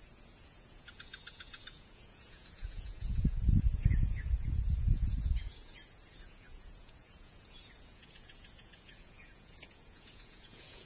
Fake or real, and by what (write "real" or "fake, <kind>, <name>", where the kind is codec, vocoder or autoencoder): fake, vocoder, Vocos